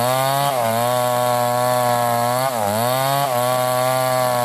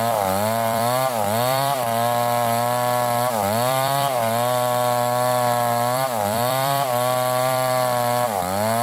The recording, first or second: first